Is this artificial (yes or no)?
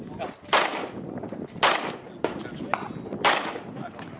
no